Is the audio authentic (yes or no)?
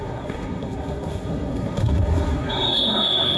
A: no